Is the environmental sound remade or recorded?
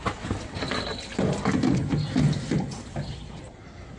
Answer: recorded